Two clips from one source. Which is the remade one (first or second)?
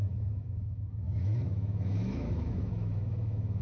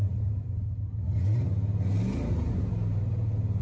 first